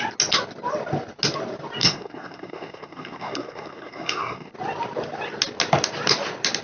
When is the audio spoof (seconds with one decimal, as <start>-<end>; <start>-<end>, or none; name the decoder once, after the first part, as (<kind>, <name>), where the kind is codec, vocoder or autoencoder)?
1.8-4.5 (codec, SNAC)